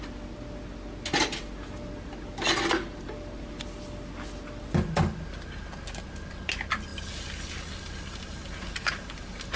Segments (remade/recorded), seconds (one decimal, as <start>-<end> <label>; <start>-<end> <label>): 0.0-9.6 recorded